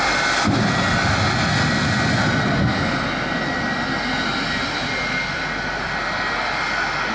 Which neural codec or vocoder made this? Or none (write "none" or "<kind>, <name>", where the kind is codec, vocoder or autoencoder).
none